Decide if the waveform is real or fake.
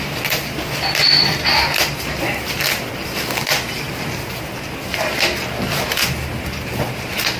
real